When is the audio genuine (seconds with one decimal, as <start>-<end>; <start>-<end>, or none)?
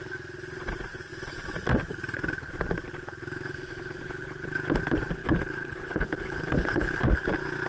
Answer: 0.0-5.2; 7.0-7.7